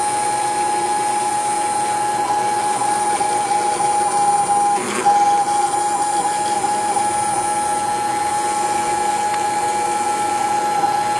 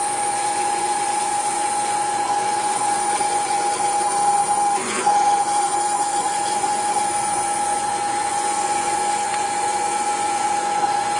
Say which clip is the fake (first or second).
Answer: second